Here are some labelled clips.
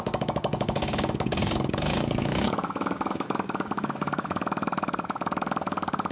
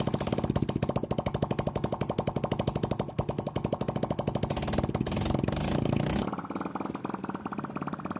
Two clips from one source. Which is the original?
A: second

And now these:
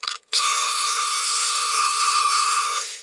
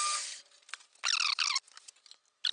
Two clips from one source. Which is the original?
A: second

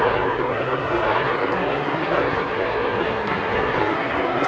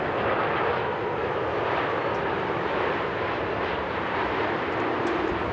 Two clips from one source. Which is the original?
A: second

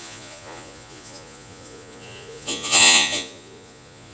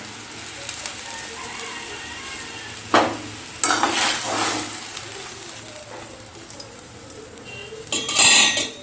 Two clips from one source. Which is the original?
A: second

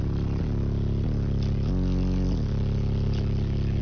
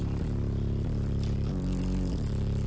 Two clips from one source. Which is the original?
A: first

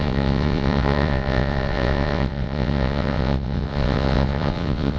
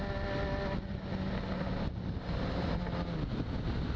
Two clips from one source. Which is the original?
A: second